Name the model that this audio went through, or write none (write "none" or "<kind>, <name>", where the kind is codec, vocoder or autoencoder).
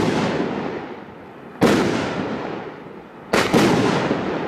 none